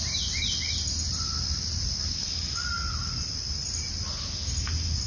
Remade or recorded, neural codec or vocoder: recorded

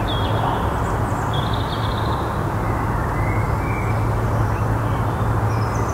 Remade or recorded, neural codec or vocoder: recorded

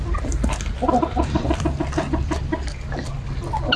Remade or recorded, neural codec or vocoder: recorded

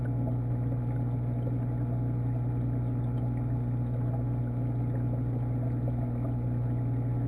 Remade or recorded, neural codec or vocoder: recorded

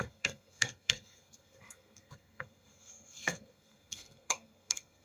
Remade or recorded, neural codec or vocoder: remade, codec, SNAC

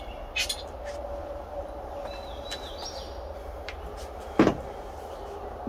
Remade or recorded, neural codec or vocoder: recorded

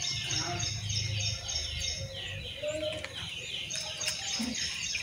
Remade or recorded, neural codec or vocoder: recorded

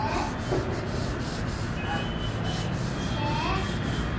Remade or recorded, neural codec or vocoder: recorded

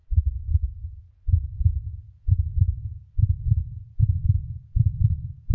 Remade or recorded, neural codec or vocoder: recorded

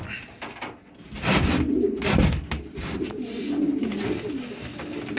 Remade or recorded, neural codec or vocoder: recorded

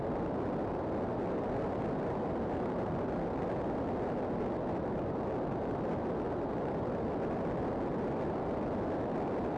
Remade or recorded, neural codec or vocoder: recorded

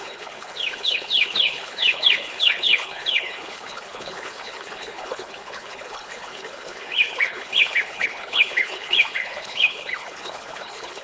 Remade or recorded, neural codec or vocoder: remade, codec, HILCodec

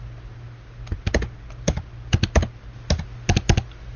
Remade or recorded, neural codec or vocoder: recorded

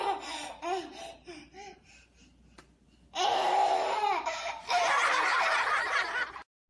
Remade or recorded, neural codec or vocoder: recorded